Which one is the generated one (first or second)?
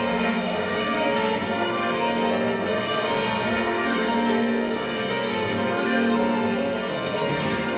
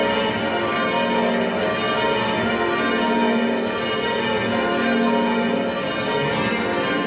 first